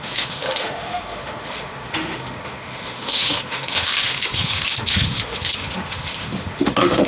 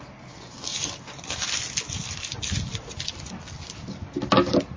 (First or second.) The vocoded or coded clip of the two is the first